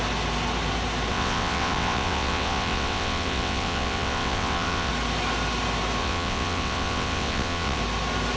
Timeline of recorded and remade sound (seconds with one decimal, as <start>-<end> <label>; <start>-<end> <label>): 0.0-1.1 recorded; 1.1-4.9 remade; 4.9-6.0 recorded; 6.0-7.8 remade; 7.8-8.4 recorded